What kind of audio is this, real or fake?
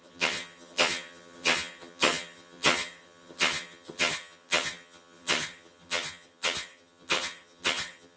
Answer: fake